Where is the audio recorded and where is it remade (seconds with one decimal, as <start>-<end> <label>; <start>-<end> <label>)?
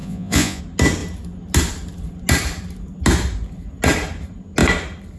0.0-0.6 remade; 0.6-5.2 recorded